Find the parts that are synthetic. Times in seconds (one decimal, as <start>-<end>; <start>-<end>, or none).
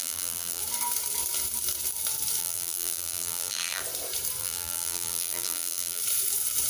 0.0-0.6; 2.4-3.8; 4.4-6.0